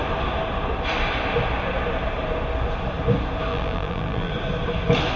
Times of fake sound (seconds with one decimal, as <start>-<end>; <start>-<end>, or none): 3.5-4.3